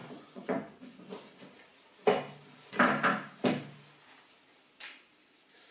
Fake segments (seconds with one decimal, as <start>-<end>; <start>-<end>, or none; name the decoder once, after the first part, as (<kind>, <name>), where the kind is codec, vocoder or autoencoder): 0.0-1.1 (vocoder, Vocos)